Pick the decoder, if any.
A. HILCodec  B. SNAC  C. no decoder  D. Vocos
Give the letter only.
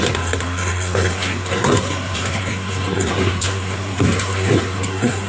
B